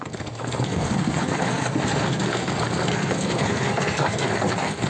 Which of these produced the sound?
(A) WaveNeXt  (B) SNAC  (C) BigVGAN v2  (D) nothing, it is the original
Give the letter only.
B